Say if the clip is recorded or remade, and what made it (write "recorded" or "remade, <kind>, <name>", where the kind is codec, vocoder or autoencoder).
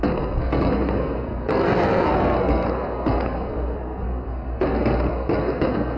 remade, codec, SNAC